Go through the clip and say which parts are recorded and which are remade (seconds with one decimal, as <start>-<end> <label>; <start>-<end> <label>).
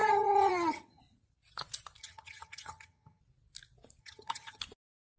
0.0-1.0 remade; 1.0-2.0 recorded; 2.0-3.2 remade; 3.2-4.0 recorded; 4.0-4.6 remade; 4.6-5.2 recorded